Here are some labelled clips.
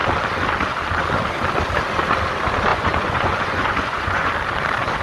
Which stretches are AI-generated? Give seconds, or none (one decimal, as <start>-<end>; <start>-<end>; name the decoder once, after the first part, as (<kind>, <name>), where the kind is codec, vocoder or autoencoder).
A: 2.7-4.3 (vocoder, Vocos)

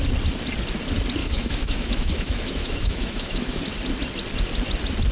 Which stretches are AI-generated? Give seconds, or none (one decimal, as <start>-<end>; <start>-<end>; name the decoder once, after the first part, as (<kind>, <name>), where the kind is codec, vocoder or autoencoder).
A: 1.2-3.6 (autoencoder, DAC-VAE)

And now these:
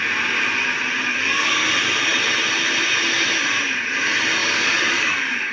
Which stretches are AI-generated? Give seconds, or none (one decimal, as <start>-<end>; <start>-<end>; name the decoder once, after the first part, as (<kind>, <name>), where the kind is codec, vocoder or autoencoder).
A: 1.1-1.7 (codec, DAC); 4.4-5.5

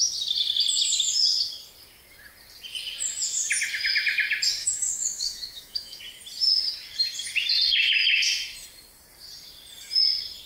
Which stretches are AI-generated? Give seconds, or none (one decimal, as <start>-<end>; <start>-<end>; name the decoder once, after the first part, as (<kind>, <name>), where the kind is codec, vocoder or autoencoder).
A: 4.6-6.0 (autoencoder, DAC-VAE)